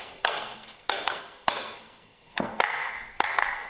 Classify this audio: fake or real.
fake